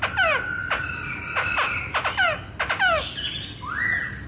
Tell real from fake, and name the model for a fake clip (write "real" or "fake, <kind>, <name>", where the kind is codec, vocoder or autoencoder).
real